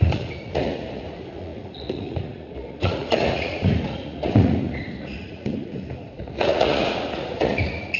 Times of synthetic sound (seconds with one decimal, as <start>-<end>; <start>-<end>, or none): 0.0-8.0